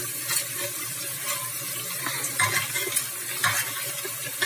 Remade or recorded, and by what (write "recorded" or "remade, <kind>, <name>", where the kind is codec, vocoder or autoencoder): recorded